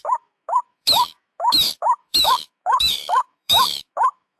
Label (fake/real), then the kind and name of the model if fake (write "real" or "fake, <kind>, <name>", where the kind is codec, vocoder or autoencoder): fake, autoencoder, DAC-VAE